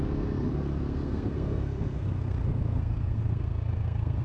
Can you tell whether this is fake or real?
fake